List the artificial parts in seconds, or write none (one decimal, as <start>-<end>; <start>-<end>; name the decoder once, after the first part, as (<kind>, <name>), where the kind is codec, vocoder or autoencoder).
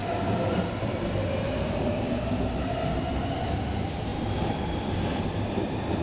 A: none